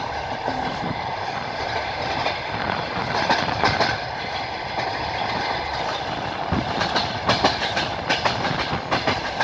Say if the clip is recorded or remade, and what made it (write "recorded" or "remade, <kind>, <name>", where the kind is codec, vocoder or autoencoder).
recorded